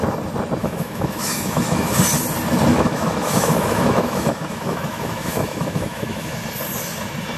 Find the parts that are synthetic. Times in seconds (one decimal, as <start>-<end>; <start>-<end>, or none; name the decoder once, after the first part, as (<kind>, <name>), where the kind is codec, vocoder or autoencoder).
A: 0.6-2.0 (autoencoder, DAC-VAE); 2.7-6.3